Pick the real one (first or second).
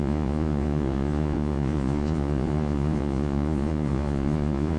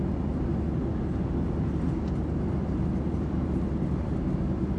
second